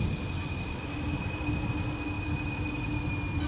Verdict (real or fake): real